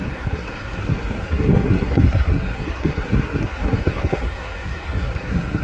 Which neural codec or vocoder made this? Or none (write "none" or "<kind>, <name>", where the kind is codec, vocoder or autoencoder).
codec, SNAC